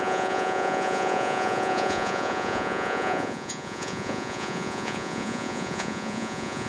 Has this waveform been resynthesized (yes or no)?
yes